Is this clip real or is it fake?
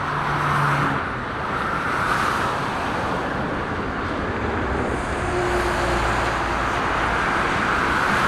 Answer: real